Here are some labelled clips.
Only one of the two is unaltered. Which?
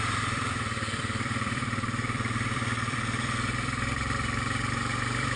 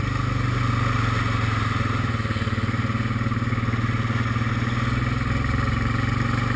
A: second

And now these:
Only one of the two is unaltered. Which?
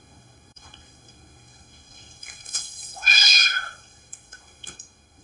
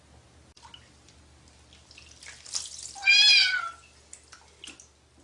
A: second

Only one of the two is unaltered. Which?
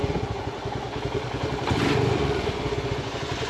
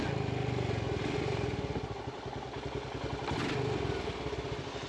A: second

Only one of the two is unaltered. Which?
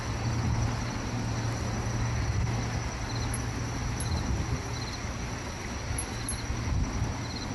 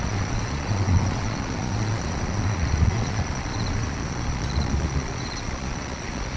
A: first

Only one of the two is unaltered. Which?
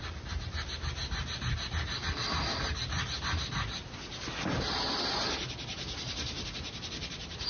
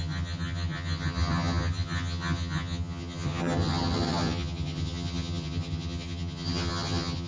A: first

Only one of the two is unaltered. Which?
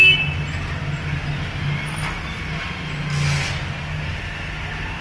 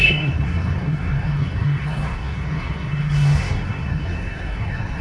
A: first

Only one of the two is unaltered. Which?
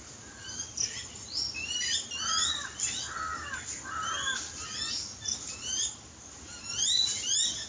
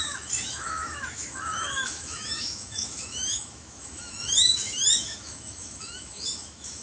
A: first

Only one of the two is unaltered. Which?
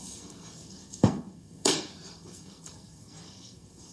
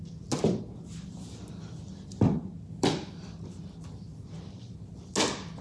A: second